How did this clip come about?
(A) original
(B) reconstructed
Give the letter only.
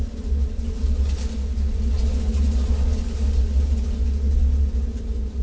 A